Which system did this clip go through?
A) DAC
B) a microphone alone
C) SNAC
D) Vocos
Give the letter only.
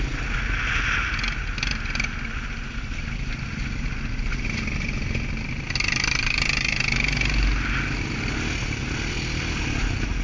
B